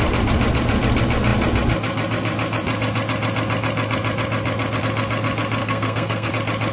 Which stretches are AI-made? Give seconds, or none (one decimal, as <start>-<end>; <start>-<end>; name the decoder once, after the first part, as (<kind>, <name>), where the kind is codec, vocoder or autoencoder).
5.6-6.3 (codec, SNAC)